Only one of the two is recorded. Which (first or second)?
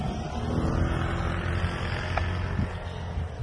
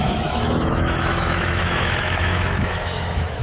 first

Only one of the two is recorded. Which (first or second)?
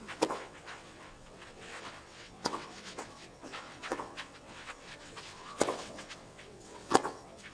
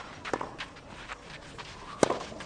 second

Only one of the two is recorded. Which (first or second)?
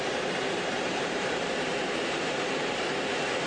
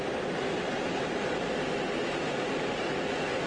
second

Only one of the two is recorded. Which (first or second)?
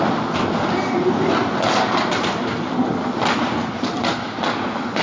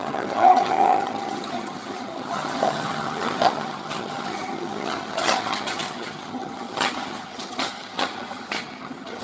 first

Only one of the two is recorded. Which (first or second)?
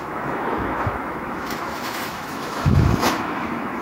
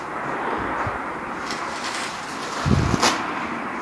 second